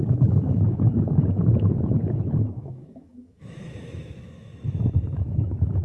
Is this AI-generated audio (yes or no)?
yes